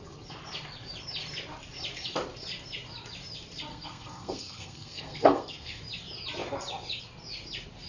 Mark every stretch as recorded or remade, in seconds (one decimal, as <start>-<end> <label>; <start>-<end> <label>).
0.0-3.7 recorded; 3.7-5.8 remade; 5.8-7.9 recorded